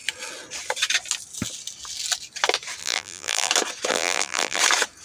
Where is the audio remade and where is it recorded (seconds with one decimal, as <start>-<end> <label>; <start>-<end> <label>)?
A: 0.0-2.8 recorded; 2.8-3.5 remade; 3.5-3.9 recorded; 3.9-4.6 remade; 4.6-5.0 recorded